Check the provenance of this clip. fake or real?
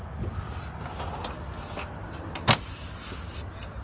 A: real